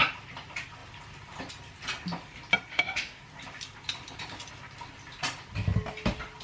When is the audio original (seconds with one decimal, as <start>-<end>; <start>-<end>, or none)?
0.0-2.7; 3.2-6.4